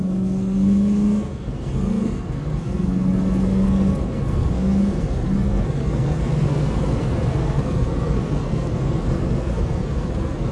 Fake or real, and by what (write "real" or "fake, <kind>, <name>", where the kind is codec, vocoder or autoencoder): fake, codec, SNAC